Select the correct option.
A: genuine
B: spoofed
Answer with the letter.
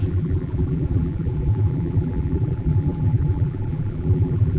B